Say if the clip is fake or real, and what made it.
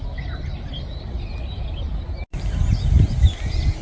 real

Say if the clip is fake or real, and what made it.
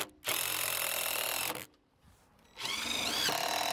real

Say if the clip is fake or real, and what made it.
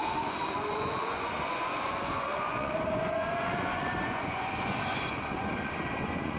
fake, vocoder, Vocos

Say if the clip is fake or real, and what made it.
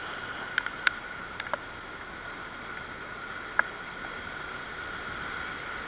real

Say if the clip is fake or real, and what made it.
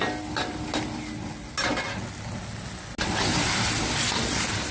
real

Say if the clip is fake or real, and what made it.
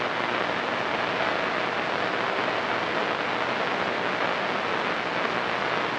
real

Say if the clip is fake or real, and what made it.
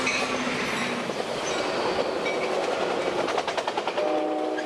real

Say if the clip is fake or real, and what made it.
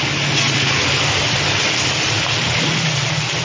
real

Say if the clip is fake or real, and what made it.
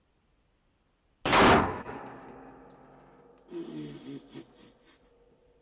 real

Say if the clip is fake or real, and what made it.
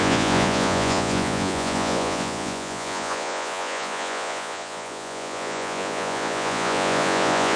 fake, vocoder, Vocos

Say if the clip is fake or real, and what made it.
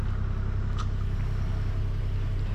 real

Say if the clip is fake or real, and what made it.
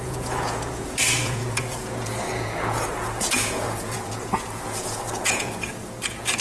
fake, vocoder, Vocos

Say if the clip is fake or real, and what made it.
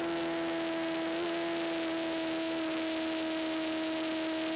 real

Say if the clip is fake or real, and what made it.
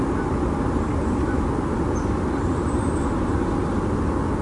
real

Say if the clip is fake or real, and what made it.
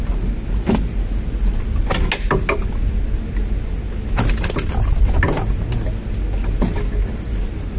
real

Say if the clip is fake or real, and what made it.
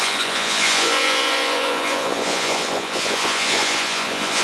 fake, vocoder, Vocos